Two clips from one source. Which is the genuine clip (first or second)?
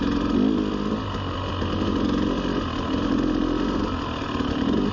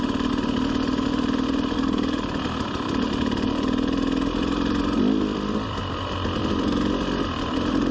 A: first